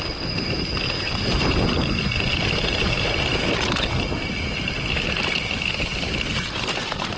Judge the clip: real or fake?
real